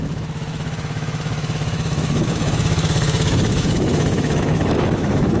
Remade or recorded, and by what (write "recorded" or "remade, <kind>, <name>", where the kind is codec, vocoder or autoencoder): remade, autoencoder, DAC-VAE